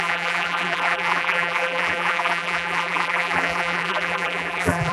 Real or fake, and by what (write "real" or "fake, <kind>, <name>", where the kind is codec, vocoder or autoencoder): fake, vocoder, BigVGAN v2